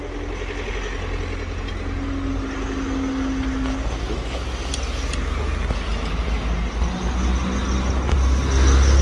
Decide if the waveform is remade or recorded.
recorded